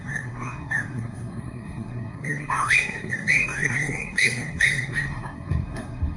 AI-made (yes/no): yes